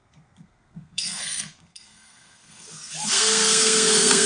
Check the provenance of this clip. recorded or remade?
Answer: remade